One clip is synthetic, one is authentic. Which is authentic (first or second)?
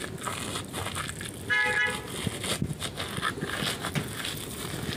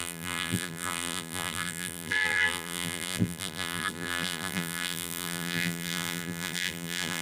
first